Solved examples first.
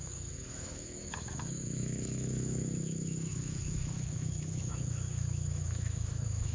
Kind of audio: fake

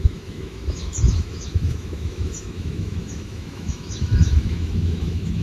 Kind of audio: fake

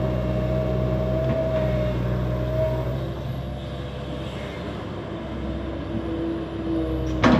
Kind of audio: real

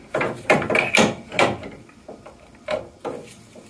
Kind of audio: real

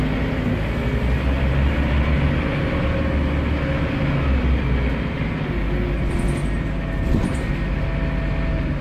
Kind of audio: real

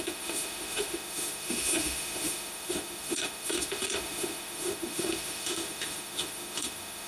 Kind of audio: fake